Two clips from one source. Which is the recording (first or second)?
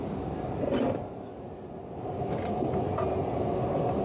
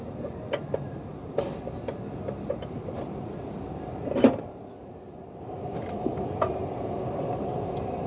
first